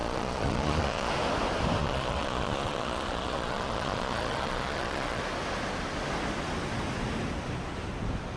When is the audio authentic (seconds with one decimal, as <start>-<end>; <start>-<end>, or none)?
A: 1.1-1.8; 5.2-8.4